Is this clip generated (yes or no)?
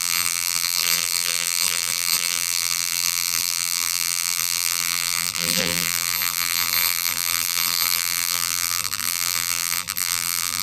yes